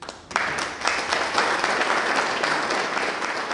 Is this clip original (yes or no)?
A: yes